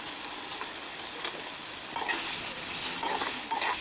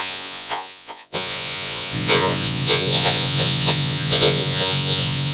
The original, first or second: first